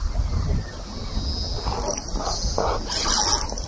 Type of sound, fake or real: real